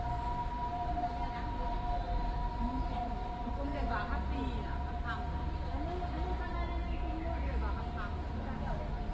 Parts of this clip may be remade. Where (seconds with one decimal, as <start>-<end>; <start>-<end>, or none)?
2.4-3.5